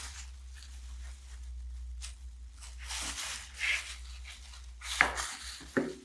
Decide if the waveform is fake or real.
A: real